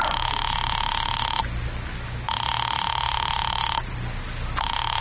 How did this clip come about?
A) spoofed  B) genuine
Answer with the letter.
B